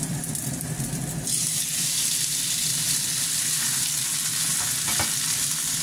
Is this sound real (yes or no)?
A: no